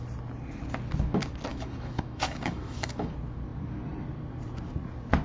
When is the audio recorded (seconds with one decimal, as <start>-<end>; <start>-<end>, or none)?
0.0-1.5; 3.1-5.2